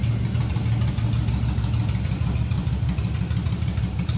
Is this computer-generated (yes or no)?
no